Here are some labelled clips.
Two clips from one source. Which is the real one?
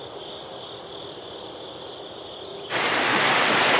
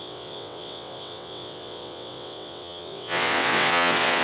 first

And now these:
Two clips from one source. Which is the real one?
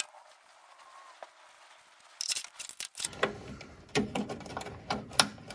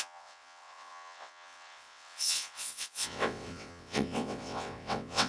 first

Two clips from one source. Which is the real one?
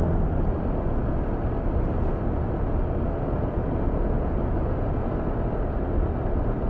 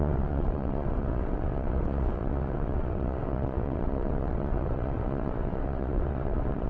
first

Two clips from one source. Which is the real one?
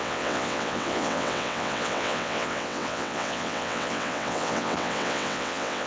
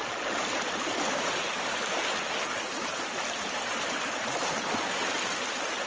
second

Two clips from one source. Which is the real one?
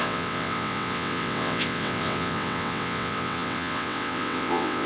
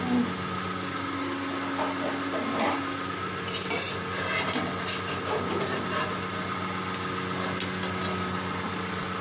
second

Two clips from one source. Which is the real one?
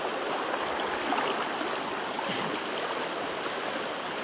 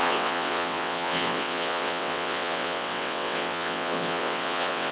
first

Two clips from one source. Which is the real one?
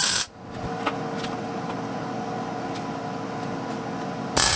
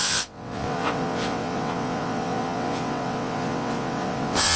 first